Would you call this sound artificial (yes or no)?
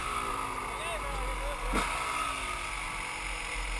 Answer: no